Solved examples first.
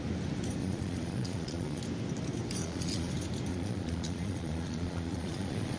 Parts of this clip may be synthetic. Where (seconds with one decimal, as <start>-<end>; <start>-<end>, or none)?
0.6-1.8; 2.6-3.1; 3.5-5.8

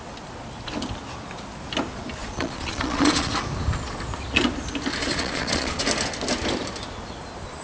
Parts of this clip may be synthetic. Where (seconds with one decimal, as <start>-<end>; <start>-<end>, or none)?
2.2-3.3; 5.0-5.8

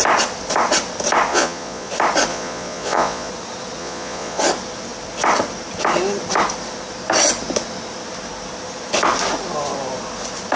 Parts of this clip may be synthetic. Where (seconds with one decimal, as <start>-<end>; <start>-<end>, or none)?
1.3-1.9; 2.3-3.3; 3.8-4.4

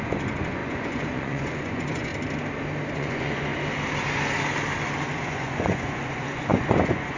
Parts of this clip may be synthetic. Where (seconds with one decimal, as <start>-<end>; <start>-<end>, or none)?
0.0-2.1; 2.9-3.5; 5.2-7.2

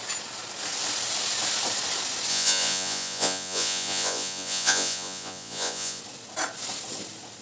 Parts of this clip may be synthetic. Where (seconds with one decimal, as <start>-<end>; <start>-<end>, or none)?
2.3-6.0

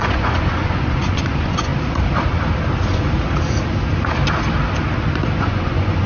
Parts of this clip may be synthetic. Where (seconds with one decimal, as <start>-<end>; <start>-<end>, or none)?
0.0-1.7; 5.4-6.1